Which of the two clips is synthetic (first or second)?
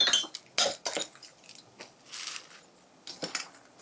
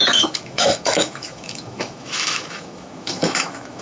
second